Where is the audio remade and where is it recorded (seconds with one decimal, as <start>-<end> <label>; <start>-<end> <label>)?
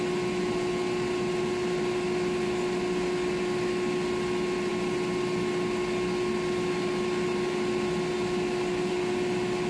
0.0-9.7 recorded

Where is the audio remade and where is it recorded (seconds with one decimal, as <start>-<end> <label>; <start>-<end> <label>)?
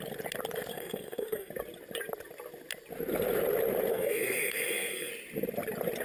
0.0-0.7 recorded; 0.7-1.5 remade; 1.5-3.9 recorded; 3.9-5.1 remade; 5.1-6.0 recorded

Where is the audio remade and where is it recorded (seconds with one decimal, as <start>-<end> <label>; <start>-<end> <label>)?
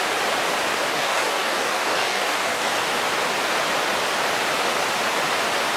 0.0-0.9 recorded; 0.9-2.8 remade; 2.8-5.8 recorded